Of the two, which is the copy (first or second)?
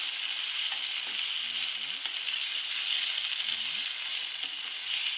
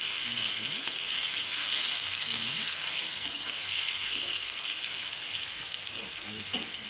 second